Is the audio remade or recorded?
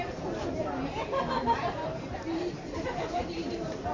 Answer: remade